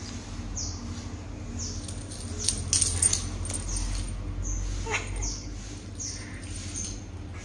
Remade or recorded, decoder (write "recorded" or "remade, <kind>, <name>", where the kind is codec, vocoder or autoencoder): recorded